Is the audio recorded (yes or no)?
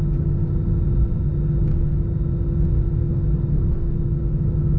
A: yes